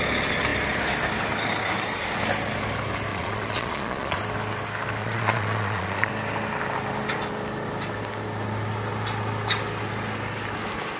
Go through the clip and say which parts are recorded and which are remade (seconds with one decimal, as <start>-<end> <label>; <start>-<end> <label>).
0.0-3.1 recorded; 3.1-4.2 remade; 4.2-5.0 recorded; 5.0-6.1 remade; 6.1-11.0 recorded